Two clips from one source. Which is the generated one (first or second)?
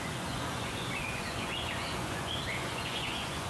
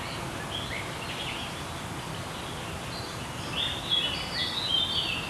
first